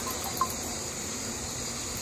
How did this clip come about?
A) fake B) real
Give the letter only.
A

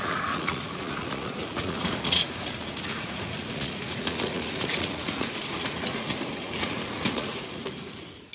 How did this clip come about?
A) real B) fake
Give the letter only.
B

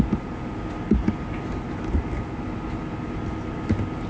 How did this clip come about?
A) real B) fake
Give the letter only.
A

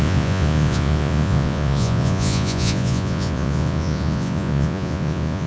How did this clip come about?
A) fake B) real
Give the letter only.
A